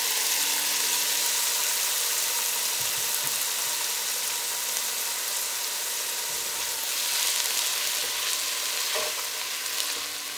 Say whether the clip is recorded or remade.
recorded